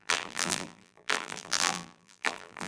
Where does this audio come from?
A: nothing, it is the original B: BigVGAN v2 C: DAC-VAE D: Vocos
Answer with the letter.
B